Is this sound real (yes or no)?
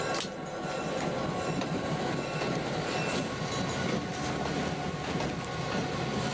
yes